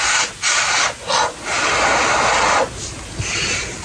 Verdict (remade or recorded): recorded